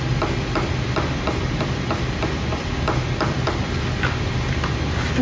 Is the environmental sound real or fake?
real